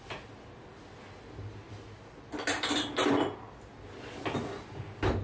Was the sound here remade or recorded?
recorded